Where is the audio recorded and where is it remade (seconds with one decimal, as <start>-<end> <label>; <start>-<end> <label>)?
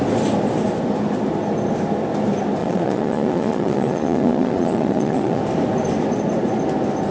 0.0-2.6 recorded; 2.6-5.4 remade; 5.4-7.1 recorded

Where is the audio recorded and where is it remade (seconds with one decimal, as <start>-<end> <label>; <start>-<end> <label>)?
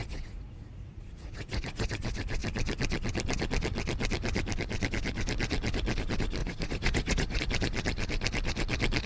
0.0-1.9 remade; 1.9-6.4 recorded; 6.4-7.4 remade; 7.4-9.1 recorded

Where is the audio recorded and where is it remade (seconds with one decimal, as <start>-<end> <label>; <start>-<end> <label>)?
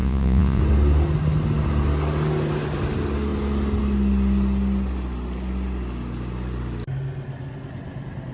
0.0-0.6 remade; 0.6-8.3 recorded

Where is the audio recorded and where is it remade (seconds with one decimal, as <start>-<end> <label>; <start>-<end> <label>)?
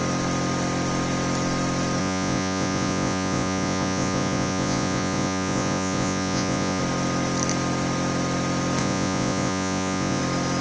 0.0-2.0 recorded; 2.0-6.8 remade; 6.8-8.8 recorded; 8.8-10.2 remade; 10.2-10.6 recorded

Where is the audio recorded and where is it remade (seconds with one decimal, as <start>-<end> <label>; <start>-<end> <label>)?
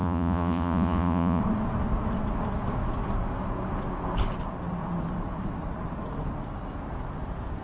0.0-1.4 remade; 1.4-7.6 recorded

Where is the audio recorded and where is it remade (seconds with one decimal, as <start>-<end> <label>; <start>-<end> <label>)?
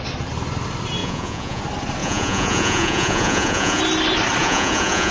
0.0-1.0 recorded; 1.0-1.6 remade; 1.6-2.0 recorded; 2.0-3.8 remade; 3.8-4.4 recorded; 4.4-5.1 remade